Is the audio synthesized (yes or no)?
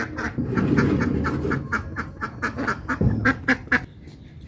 no